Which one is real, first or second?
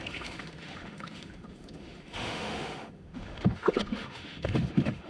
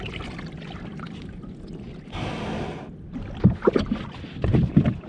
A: second